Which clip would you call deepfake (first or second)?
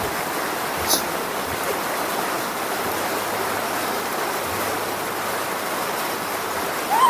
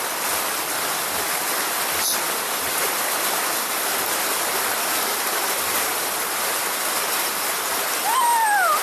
first